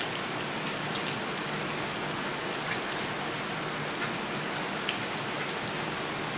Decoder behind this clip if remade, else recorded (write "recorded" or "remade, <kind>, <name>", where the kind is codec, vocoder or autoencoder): recorded